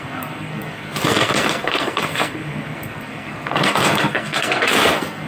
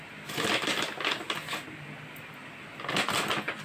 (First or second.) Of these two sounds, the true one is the second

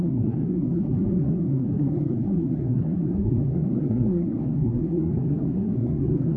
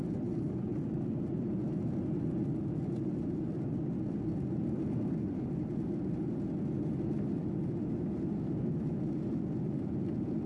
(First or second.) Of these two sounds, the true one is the second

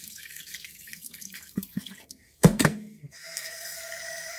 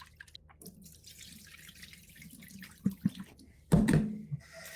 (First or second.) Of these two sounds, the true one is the second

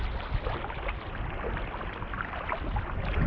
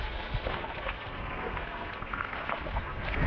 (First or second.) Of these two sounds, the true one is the first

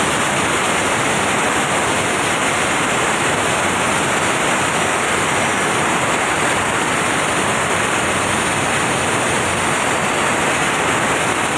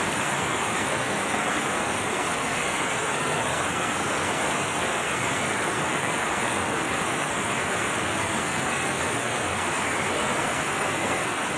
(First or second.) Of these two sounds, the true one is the first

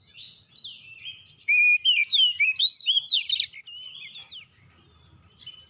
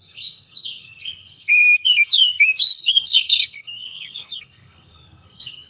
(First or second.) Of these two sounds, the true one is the first